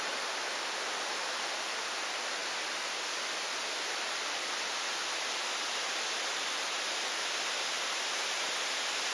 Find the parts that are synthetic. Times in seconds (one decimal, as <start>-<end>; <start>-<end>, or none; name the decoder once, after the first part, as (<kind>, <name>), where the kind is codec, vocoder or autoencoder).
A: none